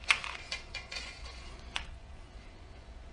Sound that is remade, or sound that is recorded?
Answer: remade